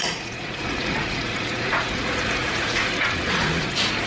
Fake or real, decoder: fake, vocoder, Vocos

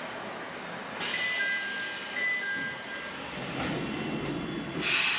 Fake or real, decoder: real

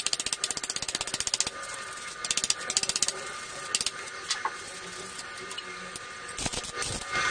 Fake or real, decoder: real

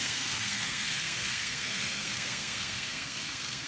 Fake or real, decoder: fake, codec, SNAC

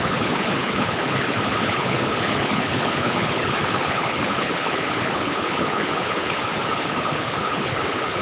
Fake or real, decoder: fake, codec, HILCodec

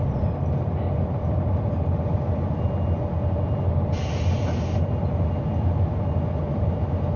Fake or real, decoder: real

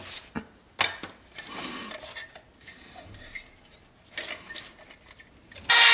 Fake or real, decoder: real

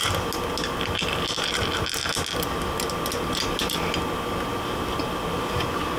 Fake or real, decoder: real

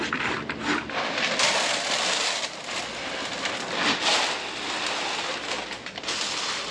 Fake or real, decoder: real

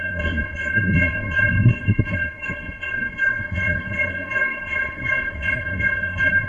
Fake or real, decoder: fake, codec, SNAC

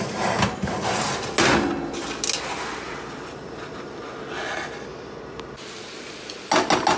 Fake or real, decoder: real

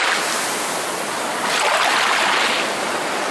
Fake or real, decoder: real